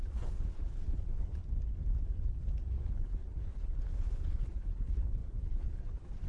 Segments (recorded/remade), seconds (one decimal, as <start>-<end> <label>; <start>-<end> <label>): 0.0-1.4 remade; 1.4-2.0 recorded; 2.0-6.3 remade